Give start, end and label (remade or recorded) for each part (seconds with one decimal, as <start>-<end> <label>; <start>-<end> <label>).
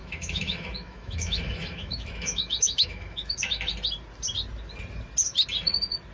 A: 0.0-3.7 remade; 3.7-6.1 recorded